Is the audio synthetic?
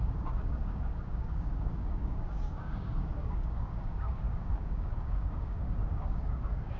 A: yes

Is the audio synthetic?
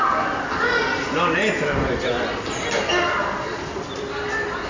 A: no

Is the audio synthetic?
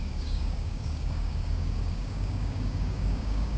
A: yes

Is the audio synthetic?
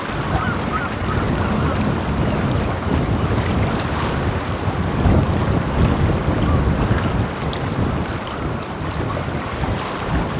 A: no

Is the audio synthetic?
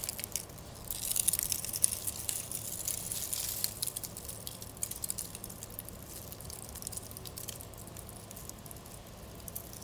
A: no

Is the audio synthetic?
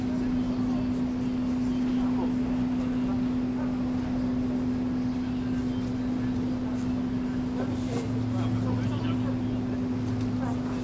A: no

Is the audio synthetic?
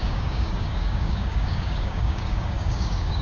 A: yes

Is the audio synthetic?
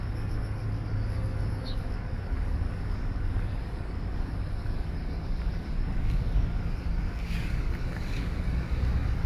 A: yes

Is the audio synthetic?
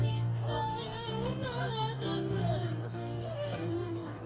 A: yes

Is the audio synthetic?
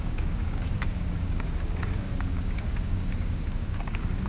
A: yes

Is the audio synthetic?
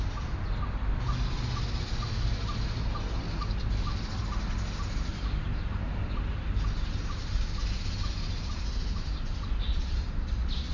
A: no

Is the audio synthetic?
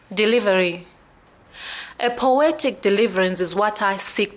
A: no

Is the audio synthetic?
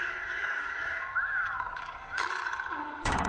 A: yes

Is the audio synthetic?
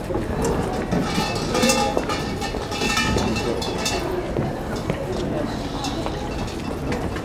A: no